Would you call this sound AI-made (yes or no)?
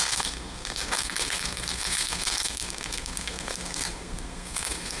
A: yes